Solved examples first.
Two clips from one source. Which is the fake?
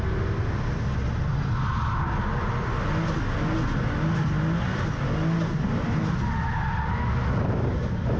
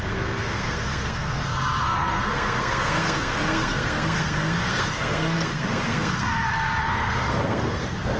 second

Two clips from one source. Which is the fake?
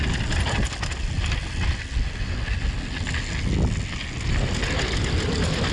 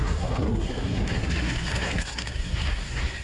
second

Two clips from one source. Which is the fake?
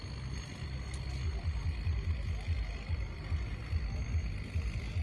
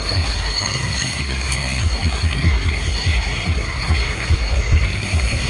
second